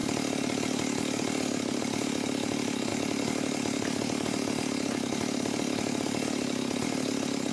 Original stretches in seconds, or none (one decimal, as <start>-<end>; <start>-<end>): 0.0-7.5